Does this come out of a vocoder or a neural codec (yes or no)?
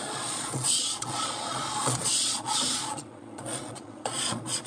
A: yes